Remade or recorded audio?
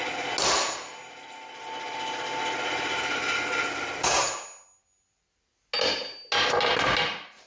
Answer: recorded